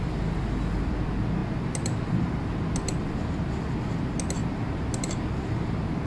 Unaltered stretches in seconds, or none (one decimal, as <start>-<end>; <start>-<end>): 0.0-6.1